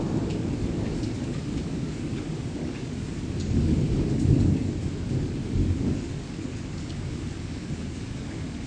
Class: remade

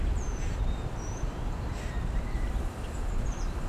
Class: remade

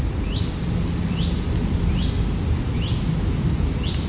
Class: recorded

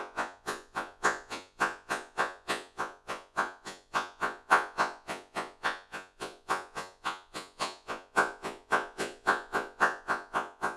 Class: remade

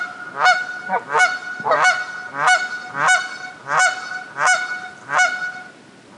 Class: recorded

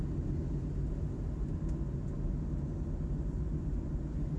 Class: recorded